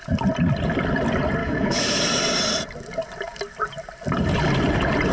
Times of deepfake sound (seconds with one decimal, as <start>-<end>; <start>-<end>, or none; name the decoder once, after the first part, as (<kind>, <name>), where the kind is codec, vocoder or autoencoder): 1.4-2.0 (autoencoder, DAC-VAE)